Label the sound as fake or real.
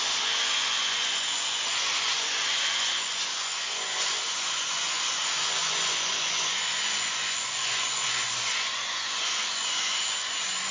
fake